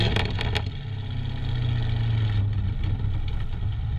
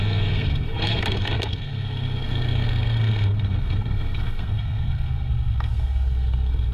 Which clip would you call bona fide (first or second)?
first